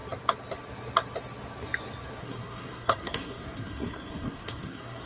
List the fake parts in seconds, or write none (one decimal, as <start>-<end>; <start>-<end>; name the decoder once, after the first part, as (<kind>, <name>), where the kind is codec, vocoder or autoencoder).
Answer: 2.2-5.1 (codec, SNAC)